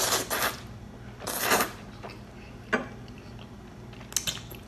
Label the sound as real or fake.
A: real